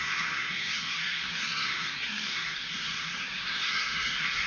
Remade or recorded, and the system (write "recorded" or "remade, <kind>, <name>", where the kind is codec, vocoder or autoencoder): remade, codec, SNAC